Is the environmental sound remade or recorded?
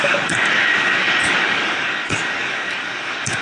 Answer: remade